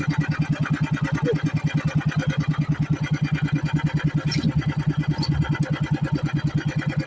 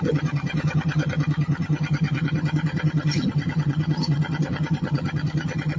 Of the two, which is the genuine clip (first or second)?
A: first